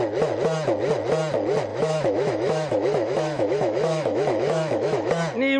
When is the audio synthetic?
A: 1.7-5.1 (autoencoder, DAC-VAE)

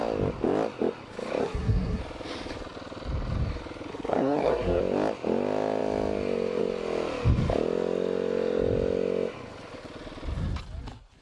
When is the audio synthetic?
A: 1.4-2.0 (codec, SNAC); 3.9-4.8